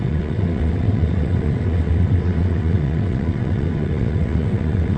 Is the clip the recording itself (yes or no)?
no